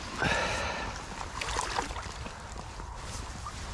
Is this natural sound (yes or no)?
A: yes